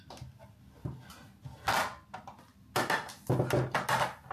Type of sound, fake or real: real